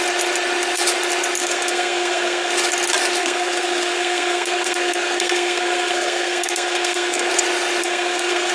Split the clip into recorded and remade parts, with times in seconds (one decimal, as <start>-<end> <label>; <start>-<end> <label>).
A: 0.0-1.4 recorded; 1.4-2.5 remade; 2.5-3.2 recorded; 3.2-7.3 remade; 7.3-7.8 recorded; 7.8-8.5 remade